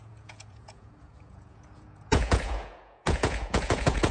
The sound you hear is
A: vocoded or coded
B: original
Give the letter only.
A